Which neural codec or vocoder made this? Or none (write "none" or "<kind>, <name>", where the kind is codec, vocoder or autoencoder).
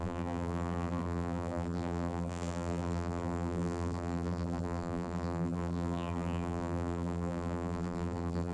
vocoder, BigVGAN v2